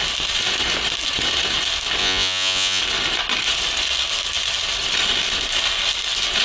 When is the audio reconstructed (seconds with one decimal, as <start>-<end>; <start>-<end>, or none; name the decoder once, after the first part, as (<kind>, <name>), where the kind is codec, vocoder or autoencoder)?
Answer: 2.0-2.8 (vocoder, Vocos)